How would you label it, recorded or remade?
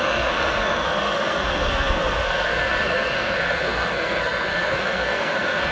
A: remade